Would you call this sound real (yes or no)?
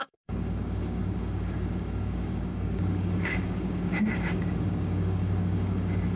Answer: no